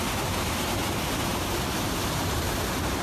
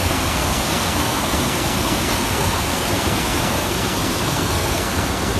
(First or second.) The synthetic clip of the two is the second